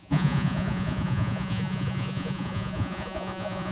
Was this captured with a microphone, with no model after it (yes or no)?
no